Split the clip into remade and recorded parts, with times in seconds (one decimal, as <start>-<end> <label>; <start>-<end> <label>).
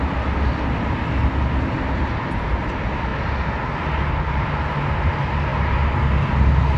0.0-6.8 recorded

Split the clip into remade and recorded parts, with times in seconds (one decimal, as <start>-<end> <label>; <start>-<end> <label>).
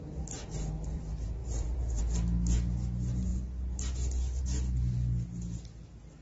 0.0-1.4 recorded; 1.4-2.0 remade; 2.0-6.2 recorded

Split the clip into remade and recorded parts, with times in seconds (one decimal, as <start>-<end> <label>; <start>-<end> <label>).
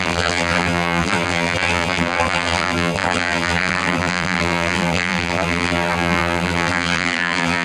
0.0-7.6 remade